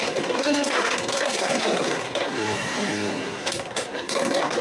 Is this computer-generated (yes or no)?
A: yes